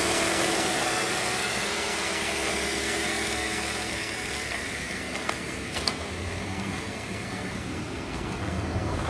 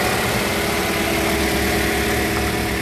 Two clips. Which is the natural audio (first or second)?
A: second